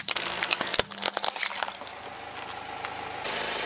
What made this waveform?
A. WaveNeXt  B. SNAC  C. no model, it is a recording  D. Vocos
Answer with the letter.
C